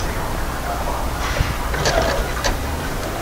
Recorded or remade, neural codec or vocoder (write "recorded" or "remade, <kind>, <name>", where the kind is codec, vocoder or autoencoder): recorded